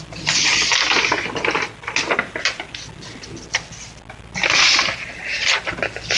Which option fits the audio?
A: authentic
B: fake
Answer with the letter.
A